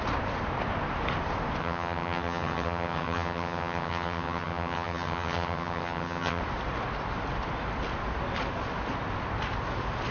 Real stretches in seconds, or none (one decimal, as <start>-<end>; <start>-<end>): 0.0-1.6; 6.4-10.1